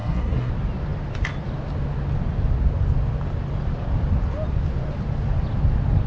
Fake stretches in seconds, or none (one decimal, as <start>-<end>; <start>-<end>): 0.0-0.5